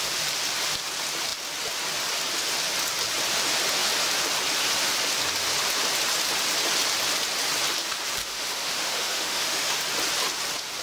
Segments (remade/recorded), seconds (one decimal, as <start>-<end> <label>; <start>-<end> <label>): 0.0-8.2 recorded; 8.2-9.8 remade; 9.8-10.8 recorded